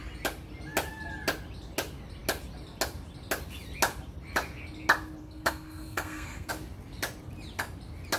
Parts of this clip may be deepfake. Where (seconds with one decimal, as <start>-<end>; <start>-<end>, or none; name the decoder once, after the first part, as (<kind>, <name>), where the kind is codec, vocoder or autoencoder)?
5.2-6.5 (codec, SNAC)